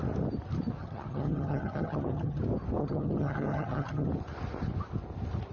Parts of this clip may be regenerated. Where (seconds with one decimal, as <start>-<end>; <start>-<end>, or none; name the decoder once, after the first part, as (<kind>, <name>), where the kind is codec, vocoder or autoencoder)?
0.8-2.4 (vocoder, HiFi-GAN); 2.8-4.1